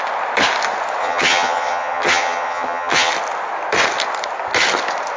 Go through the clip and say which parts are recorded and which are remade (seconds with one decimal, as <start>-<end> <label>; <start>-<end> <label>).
0.0-1.0 recorded; 1.0-3.1 remade; 3.1-5.2 recorded